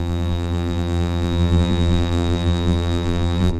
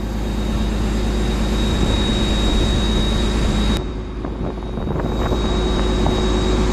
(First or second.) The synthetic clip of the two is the first